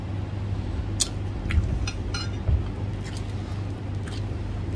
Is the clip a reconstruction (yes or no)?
no